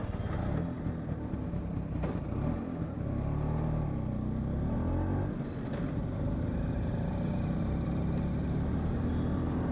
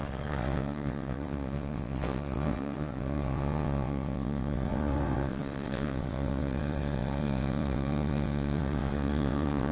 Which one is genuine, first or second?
first